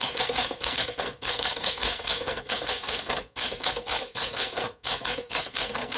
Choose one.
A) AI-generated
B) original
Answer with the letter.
A